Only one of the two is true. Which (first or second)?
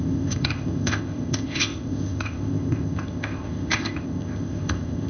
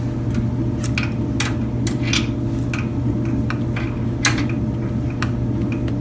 second